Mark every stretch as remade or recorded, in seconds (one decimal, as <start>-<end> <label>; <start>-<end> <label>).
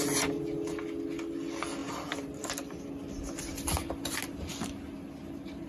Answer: 0.0-1.8 recorded; 1.8-2.8 remade; 2.8-5.7 recorded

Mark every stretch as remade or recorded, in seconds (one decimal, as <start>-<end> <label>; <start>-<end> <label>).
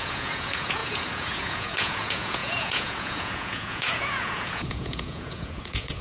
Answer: 0.0-6.0 remade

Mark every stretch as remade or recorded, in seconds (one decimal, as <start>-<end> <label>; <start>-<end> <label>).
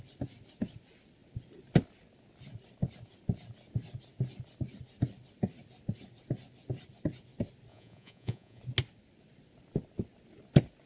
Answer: 0.0-7.7 recorded; 7.7-8.6 remade; 8.6-10.9 recorded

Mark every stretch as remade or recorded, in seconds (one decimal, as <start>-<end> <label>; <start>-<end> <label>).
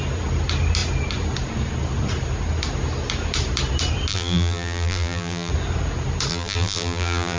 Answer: 0.0-4.1 recorded; 4.1-5.5 remade; 5.5-6.3 recorded; 6.3-7.4 remade